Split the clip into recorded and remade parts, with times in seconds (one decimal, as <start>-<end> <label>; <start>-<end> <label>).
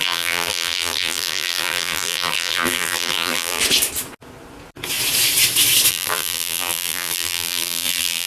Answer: 0.0-3.6 remade; 3.6-5.9 recorded; 5.9-8.3 remade